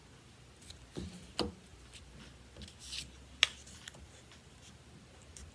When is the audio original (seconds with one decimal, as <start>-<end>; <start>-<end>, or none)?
0.0-5.5